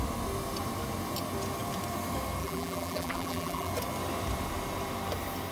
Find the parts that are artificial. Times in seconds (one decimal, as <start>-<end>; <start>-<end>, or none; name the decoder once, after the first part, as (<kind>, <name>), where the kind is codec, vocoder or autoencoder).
2.4-3.7 (vocoder, BigVGAN v2)